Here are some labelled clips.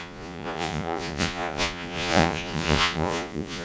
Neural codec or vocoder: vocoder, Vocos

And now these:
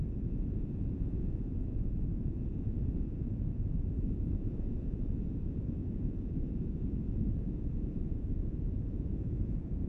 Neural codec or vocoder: vocoder, Vocos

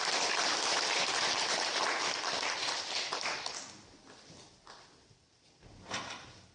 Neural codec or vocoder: none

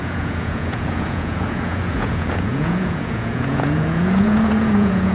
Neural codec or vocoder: vocoder, Vocos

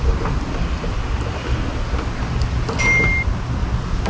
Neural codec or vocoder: none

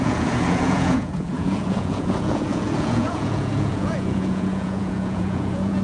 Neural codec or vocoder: vocoder, Vocos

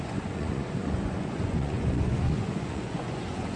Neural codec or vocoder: vocoder, Vocos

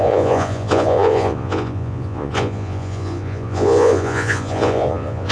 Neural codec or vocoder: vocoder, Vocos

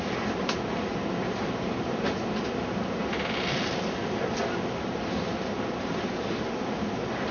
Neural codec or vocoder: none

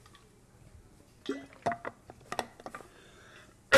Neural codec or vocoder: none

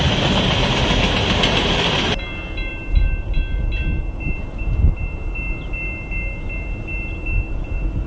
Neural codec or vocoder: none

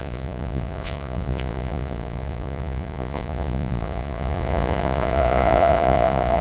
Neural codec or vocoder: vocoder, Vocos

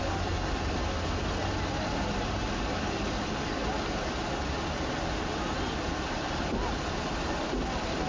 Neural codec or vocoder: none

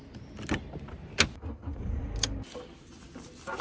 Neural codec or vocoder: none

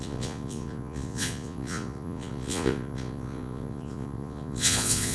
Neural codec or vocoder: vocoder, Vocos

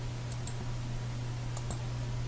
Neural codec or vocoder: none